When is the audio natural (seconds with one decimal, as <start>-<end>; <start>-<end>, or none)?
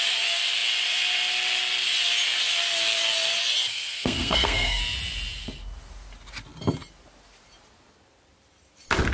0.0-3.7; 4.8-9.1